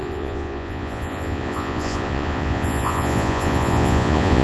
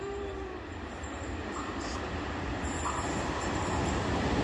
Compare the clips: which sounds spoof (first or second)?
first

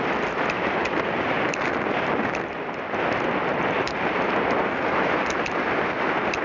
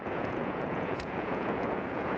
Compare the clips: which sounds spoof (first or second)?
second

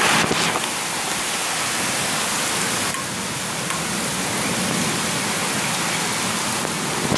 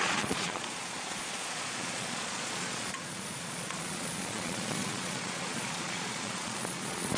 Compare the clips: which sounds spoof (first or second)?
second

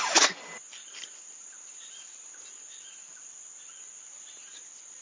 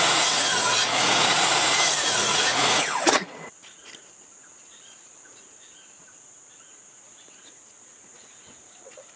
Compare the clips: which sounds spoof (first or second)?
second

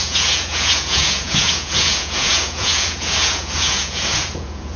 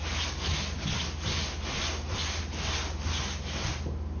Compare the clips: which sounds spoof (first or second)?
first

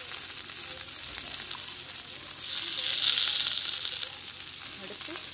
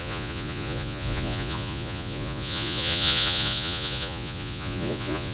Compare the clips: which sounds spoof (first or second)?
second